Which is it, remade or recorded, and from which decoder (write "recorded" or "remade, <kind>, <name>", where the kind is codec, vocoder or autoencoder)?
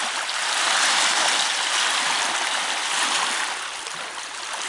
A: recorded